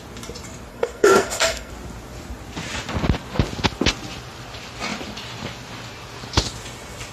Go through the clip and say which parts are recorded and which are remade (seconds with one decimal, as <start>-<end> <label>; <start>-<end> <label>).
0.0-0.7 recorded; 0.7-1.7 remade; 1.7-7.1 recorded